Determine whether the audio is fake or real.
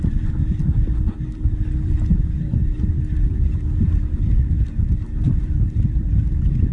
fake